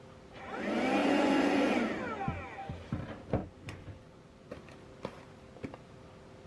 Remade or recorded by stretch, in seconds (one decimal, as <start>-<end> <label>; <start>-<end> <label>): 0.0-1.0 recorded; 1.0-1.7 remade; 1.7-3.4 recorded; 3.4-4.5 remade; 4.5-6.5 recorded